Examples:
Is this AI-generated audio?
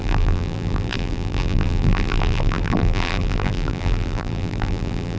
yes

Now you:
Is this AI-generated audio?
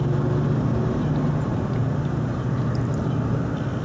no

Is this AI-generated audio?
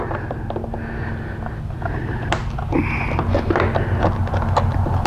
no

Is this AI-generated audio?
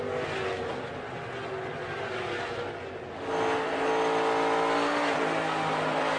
no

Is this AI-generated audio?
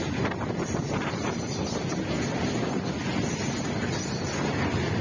no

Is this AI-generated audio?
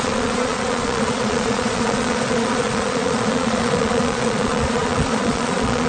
yes